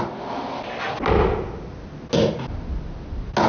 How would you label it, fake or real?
real